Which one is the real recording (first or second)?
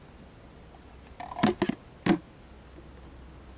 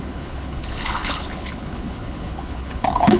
first